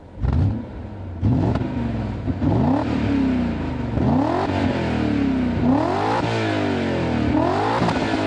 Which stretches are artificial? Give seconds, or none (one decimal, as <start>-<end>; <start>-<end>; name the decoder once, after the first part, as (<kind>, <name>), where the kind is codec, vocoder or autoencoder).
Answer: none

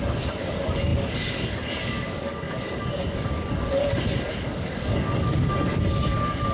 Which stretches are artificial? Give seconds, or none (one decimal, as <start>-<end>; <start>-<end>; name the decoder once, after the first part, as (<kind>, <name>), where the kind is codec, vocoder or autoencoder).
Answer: 0.0-6.5 (codec, DAC)

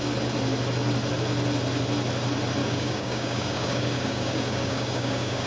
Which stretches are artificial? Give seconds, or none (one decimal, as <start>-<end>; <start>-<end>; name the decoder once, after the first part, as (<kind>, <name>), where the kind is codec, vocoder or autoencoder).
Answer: 2.6-5.5 (codec, DAC)